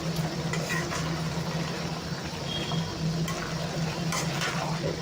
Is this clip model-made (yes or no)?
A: no